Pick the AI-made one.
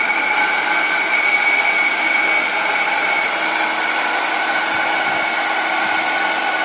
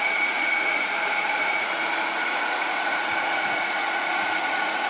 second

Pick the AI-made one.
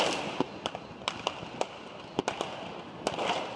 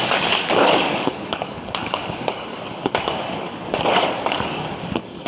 second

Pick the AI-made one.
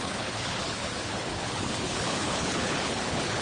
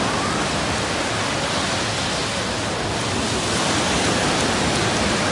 first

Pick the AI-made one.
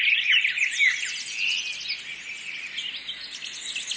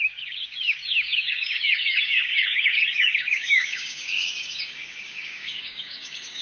second